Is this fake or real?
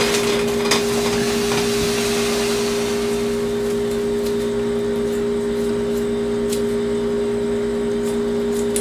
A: real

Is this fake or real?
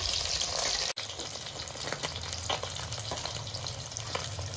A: real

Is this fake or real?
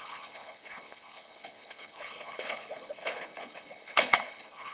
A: fake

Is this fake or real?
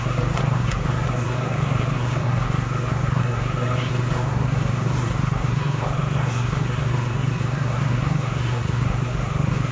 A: fake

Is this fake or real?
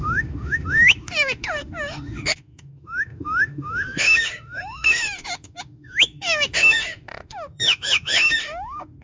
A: fake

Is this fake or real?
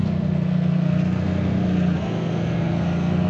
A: fake